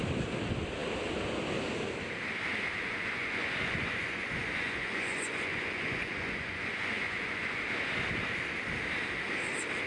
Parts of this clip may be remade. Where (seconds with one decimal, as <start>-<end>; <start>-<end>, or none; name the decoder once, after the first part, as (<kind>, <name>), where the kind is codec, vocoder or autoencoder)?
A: 2.8-7.6 (vocoder, Vocos)